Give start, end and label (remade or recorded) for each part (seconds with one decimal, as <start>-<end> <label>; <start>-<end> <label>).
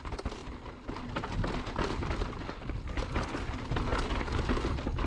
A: 0.0-5.1 recorded